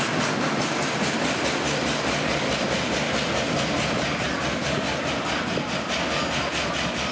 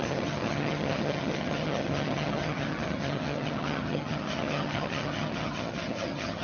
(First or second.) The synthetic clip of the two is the second